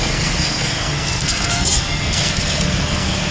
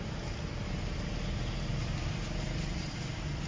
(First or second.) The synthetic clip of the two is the first